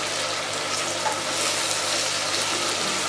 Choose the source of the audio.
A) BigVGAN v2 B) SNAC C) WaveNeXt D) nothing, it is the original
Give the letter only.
D